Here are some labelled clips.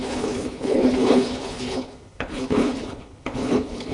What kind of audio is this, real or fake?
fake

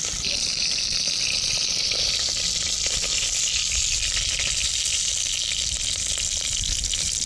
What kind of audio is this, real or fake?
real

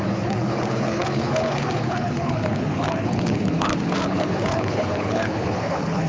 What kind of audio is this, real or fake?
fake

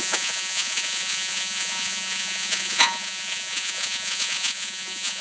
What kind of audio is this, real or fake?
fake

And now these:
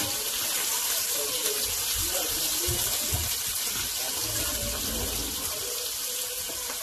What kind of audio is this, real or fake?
real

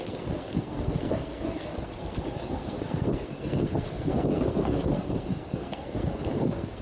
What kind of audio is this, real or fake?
fake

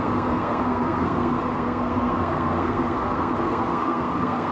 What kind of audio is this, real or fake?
fake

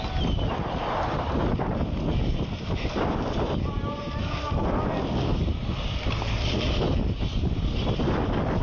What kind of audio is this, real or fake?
real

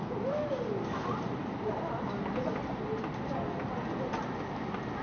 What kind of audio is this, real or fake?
real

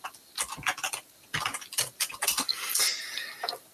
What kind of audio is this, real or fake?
fake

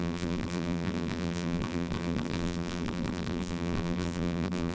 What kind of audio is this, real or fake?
fake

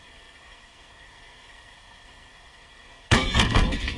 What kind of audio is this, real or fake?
fake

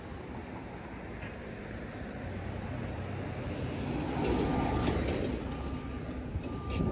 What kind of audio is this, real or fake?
real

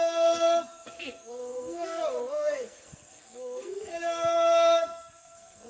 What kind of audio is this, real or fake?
fake